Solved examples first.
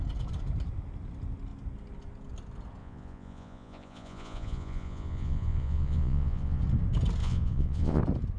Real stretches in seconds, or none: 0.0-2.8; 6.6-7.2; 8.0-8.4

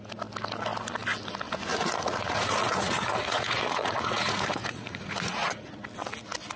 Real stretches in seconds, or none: 0.0-1.7; 5.7-6.6

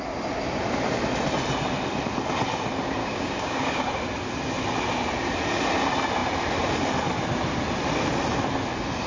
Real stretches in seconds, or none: 0.0-3.0; 3.9-9.1